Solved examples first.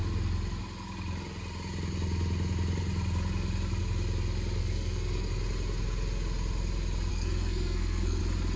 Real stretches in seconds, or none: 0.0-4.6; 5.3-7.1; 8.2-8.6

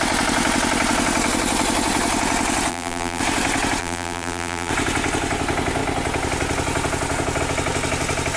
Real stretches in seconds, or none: 0.0-2.7; 3.2-3.8; 4.7-8.4

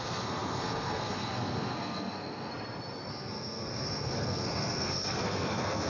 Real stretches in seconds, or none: 2.5-3.1

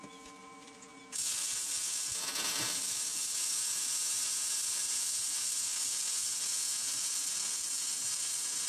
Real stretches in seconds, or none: 0.0-0.4; 1.0-8.7

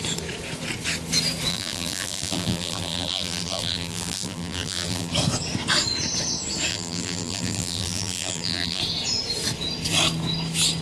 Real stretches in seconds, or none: 0.0-1.5; 5.1-6.7; 8.8-10.8

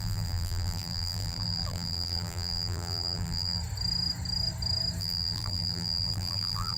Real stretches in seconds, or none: 3.6-5.0